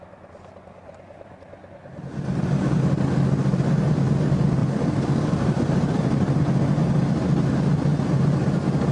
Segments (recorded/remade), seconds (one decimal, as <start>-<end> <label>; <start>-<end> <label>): 0.0-4.6 recorded; 4.6-6.0 remade; 6.0-8.9 recorded